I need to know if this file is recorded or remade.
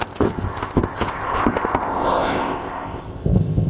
remade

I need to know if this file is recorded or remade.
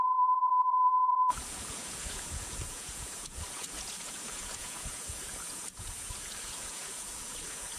remade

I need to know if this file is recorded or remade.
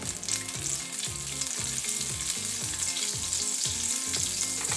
recorded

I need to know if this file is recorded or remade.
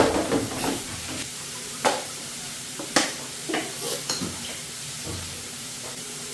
remade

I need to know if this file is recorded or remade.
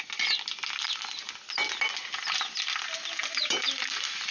recorded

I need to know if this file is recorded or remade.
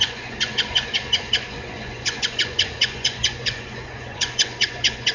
remade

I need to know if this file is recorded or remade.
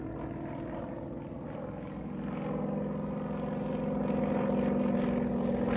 recorded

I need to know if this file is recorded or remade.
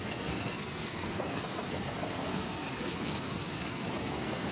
remade